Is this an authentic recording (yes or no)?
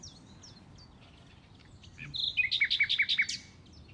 yes